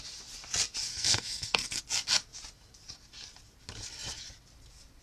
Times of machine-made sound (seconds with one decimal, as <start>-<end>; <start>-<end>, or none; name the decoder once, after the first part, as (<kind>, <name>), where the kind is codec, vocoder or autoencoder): 0.9-1.8 (codec, SNAC)